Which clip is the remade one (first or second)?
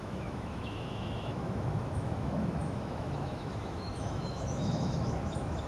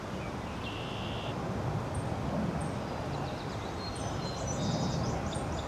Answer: first